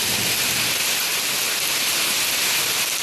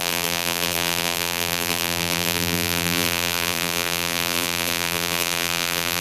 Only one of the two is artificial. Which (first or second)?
second